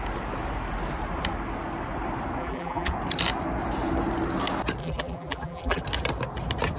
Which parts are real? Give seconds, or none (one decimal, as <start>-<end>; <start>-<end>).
0.0-2.4; 2.9-4.8; 5.8-6.8